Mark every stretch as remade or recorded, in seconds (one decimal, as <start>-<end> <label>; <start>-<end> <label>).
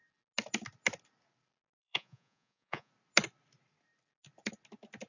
0.0-1.8 recorded; 1.8-2.9 remade; 2.9-5.1 recorded